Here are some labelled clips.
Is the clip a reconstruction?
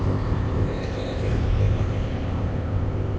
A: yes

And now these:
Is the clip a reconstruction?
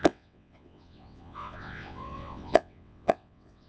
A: yes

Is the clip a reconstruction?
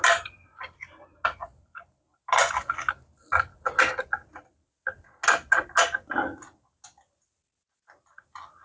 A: no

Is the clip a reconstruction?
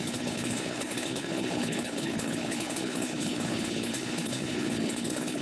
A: yes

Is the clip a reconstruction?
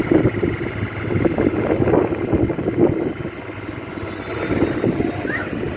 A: no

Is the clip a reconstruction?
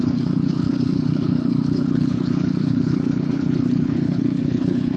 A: yes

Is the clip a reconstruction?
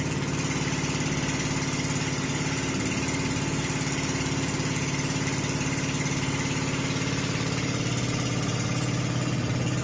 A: no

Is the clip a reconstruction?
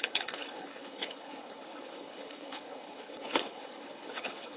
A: yes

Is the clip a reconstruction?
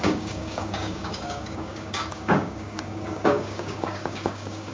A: yes